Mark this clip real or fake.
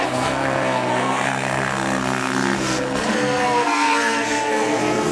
fake